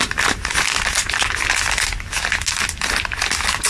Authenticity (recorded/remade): recorded